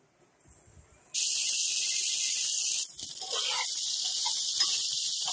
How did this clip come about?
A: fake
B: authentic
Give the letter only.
B